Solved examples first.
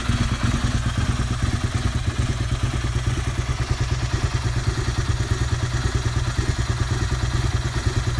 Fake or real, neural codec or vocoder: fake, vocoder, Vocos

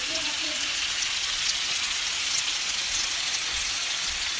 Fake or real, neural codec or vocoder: fake, vocoder, Vocos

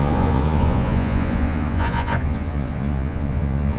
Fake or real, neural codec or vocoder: fake, vocoder, Vocos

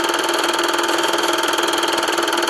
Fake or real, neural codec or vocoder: real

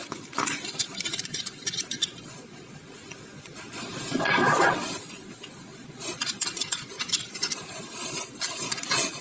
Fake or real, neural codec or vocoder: fake, vocoder, Vocos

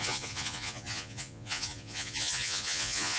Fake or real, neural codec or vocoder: fake, vocoder, Vocos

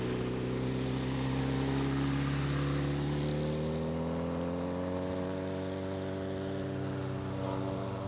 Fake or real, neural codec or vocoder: real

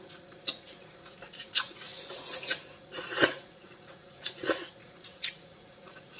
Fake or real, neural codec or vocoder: fake, vocoder, Vocos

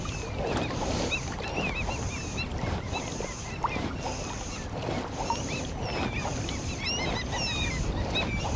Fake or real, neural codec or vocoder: real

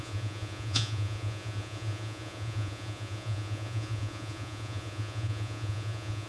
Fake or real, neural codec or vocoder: fake, vocoder, Vocos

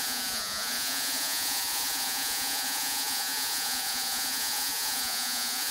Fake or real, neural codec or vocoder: fake, vocoder, Vocos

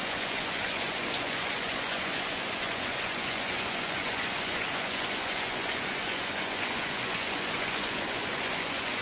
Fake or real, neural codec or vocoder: fake, vocoder, Vocos